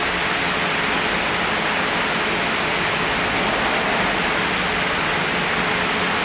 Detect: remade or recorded recorded